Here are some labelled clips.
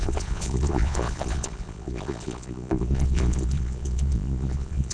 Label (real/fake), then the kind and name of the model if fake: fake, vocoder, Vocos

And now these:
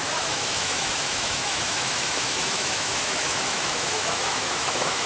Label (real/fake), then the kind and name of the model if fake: fake, autoencoder, DAC-VAE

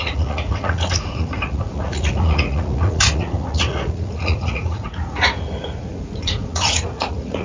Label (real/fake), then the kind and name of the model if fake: fake, vocoder, Vocos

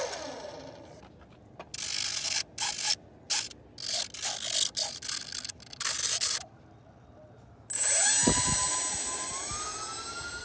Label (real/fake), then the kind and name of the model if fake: real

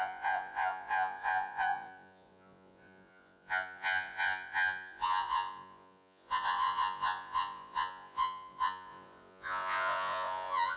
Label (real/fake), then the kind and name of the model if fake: fake, vocoder, Vocos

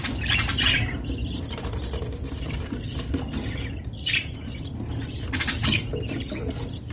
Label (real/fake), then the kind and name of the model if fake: real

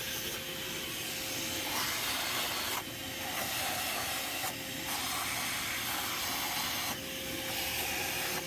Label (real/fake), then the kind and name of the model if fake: real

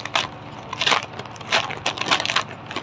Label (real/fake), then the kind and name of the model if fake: real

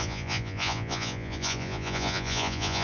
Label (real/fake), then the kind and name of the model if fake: fake, vocoder, Vocos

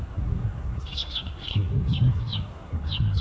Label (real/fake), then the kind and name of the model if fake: fake, codec, SNAC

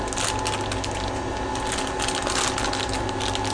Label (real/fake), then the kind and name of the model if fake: real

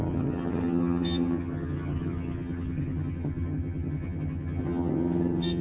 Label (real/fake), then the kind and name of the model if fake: fake, vocoder, HiFi-GAN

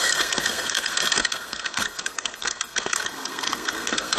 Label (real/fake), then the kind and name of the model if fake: fake, codec, SNAC